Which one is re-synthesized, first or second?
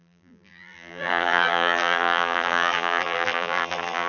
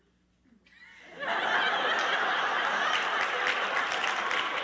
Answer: first